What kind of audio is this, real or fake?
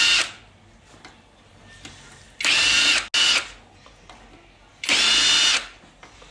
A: real